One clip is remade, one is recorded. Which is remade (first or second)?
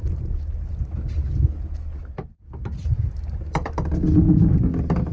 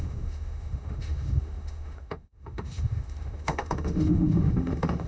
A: second